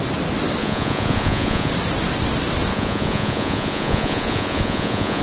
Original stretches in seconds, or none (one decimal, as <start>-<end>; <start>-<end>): 0.0-0.6; 1.7-2.7

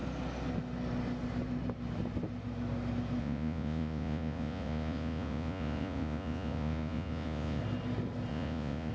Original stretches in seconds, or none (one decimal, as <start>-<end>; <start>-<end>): 0.0-3.2; 7.6-8.3

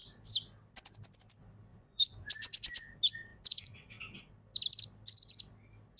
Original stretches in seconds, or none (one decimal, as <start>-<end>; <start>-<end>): 0.0-1.7; 2.3-3.3; 4.0-6.0

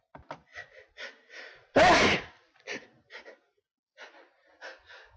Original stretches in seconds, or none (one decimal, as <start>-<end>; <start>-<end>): 0.0-5.2

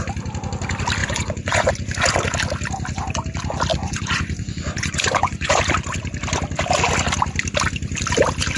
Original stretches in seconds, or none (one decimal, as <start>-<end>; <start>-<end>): 0.0-1.0; 1.7-3.7; 5.6-8.6